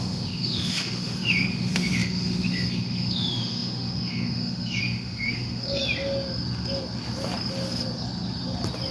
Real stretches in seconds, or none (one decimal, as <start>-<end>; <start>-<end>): 5.8-8.9